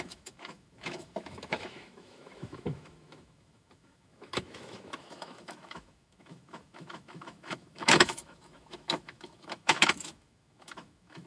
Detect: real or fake fake